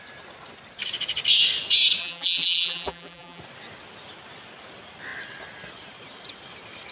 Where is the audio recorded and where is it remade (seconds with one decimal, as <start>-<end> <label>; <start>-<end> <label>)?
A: 0.0-2.0 recorded; 2.0-3.4 remade; 3.4-6.9 recorded